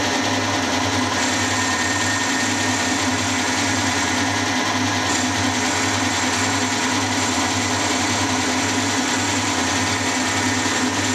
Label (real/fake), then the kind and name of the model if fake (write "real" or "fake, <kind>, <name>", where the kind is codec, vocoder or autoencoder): real